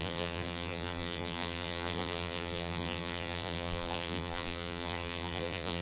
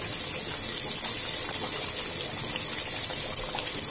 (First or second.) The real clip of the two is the second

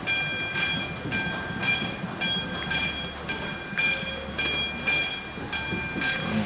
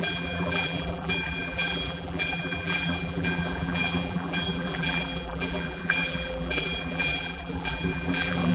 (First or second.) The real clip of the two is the first